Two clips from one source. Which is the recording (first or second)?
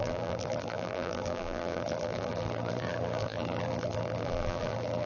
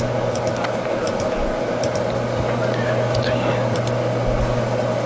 second